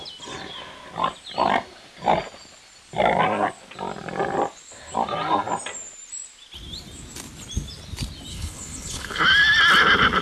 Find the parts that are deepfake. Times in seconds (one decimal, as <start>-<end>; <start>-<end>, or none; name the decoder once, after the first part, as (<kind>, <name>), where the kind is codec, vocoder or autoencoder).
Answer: 8.3-9.2 (codec, HILCodec)